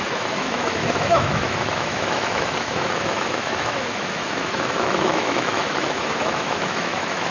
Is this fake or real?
fake